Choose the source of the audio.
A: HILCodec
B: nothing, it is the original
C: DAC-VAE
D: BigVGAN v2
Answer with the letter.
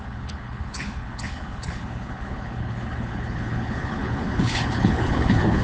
A